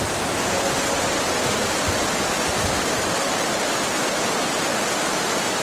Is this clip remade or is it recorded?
recorded